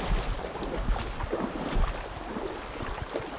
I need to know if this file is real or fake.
real